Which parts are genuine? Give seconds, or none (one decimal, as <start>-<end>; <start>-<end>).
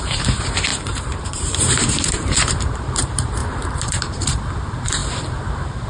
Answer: none